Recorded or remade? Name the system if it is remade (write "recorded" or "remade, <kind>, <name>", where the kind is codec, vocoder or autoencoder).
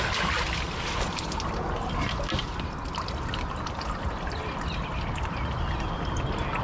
recorded